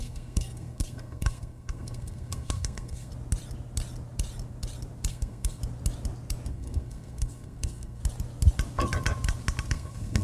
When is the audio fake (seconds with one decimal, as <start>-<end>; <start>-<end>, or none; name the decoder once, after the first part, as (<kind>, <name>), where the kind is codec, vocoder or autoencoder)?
0.0-3.1 (codec, SNAC); 5.1-5.6; 6.5-8.0; 9.7-10.2